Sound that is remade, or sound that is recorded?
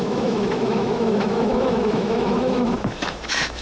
remade